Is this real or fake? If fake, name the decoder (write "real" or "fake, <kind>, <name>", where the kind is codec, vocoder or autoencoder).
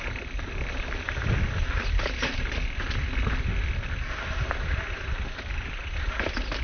real